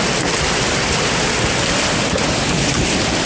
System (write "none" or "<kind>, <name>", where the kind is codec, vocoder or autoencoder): none